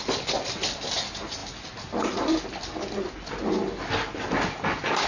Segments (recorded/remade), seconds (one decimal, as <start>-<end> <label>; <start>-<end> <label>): 0.0-5.1 recorded